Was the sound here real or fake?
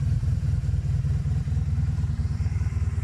real